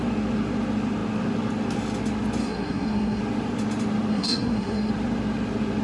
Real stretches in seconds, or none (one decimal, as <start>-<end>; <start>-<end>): 0.0-2.4; 3.2-4.1; 4.9-5.8